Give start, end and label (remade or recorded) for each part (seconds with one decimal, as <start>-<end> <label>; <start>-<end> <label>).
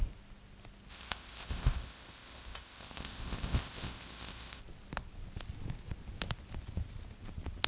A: 0.0-0.9 recorded; 0.9-4.6 remade; 4.6-7.7 recorded